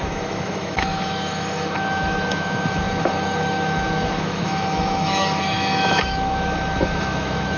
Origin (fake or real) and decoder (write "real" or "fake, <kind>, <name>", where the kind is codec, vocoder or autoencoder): fake, autoencoder, DAC-VAE